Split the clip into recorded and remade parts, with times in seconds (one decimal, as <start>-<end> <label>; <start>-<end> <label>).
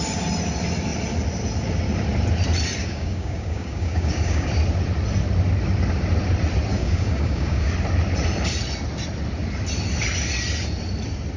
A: 0.0-2.8 recorded; 2.8-4.5 remade; 4.5-6.7 recorded; 6.7-7.7 remade; 7.7-11.4 recorded